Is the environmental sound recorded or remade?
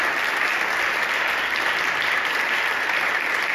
recorded